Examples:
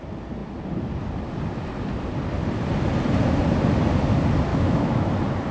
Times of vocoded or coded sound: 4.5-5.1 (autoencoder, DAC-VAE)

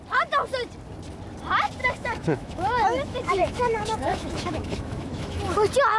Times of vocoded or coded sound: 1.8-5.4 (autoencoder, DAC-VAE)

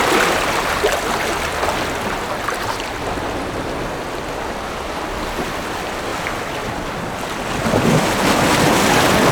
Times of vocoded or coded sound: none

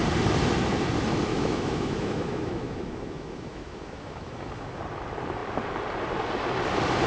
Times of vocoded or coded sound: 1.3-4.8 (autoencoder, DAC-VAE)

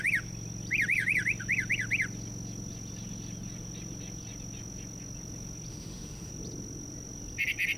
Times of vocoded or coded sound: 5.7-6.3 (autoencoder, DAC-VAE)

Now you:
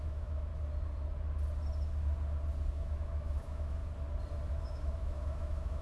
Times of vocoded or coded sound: 0.0-0.5 (autoencoder, DAC-VAE); 2.7-3.8; 4.5-5.8

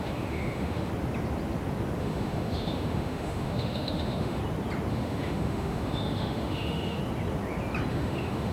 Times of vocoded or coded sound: 0.0-0.9 (autoencoder, DAC-VAE); 2.0-4.4; 4.9-7.0; 7.9-8.5

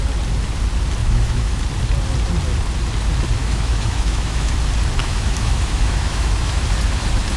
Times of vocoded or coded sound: 1.0-1.6 (autoencoder, DAC-VAE); 3.4-4.5; 5.0-6.6